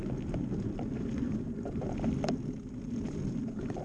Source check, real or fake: real